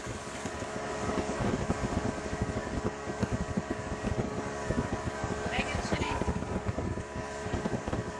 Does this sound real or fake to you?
fake